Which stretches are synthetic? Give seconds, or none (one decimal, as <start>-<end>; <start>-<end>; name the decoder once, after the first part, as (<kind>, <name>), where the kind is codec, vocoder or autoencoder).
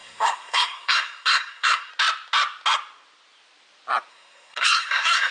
0.0-1.9 (codec, SNAC); 4.1-5.3